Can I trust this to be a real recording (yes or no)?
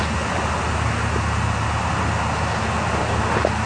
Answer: yes